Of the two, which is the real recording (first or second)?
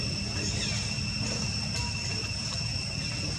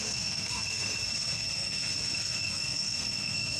first